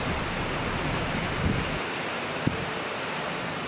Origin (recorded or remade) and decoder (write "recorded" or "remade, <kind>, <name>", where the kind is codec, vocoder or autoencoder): remade, vocoder, BigVGAN v2